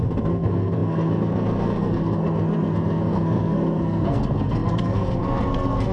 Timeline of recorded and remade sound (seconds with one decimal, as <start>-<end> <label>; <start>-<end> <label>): 0.0-5.9 remade